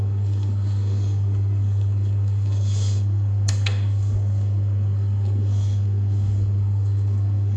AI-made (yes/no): yes